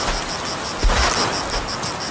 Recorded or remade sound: recorded